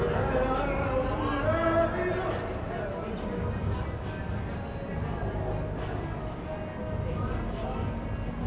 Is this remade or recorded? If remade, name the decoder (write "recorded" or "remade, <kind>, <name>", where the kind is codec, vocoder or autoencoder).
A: recorded